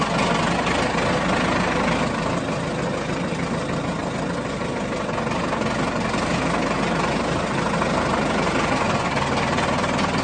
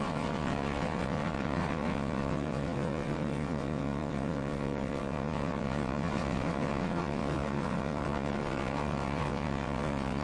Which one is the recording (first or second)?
first